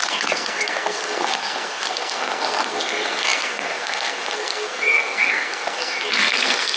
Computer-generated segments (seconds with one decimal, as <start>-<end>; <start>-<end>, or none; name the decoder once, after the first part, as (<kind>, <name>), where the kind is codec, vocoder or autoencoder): 0.0-6.8 (codec, SNAC)